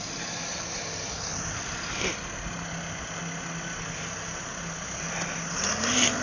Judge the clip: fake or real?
real